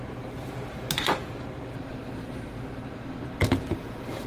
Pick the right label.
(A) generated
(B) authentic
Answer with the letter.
A